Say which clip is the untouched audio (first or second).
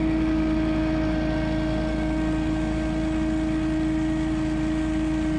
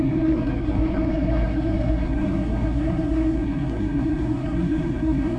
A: first